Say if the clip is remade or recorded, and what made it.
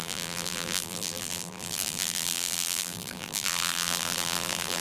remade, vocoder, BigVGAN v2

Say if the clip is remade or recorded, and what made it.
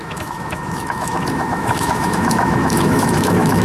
remade, autoencoder, DAC-VAE